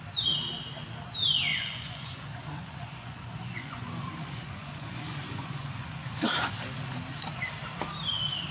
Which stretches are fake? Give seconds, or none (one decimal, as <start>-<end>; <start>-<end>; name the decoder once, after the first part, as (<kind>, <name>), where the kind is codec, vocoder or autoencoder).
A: 1.5-6.5 (vocoder, Vocos)